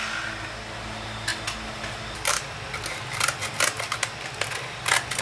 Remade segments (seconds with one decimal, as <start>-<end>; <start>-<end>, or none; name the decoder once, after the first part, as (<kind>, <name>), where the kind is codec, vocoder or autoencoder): none